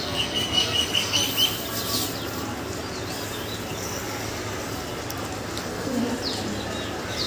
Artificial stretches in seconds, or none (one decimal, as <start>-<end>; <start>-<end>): 0.0-1.2; 5.6-6.0

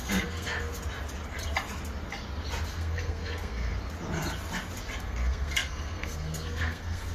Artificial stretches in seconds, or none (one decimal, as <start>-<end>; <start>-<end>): 0.0-0.7; 2.7-3.7; 5.0-7.1

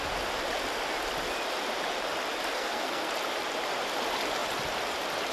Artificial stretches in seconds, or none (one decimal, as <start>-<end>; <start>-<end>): 2.5-3.1